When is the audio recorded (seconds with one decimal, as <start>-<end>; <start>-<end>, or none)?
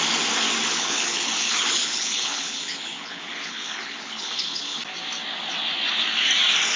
0.0-0.7; 4.8-6.8